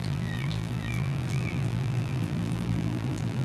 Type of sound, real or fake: fake